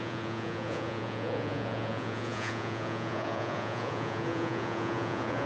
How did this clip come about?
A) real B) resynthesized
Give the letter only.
B